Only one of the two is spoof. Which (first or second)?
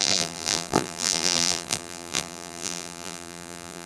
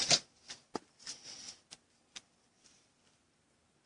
first